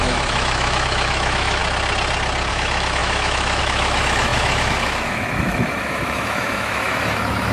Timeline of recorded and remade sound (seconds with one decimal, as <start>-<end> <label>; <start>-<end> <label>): 0.0-1.6 remade; 1.6-2.5 recorded; 2.5-7.5 remade